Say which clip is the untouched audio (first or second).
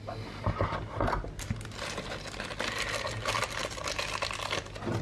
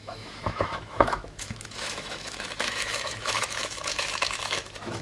first